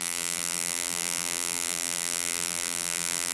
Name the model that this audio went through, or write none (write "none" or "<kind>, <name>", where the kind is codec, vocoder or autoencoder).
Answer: vocoder, BigVGAN v2